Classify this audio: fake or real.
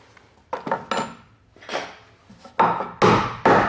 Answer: real